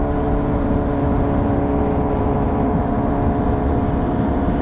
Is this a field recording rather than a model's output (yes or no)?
yes